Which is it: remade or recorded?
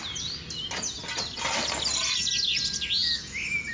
recorded